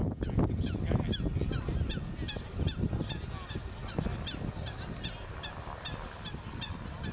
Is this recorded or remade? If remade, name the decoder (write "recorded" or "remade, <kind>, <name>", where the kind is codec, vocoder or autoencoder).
recorded